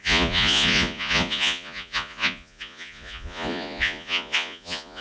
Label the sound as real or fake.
fake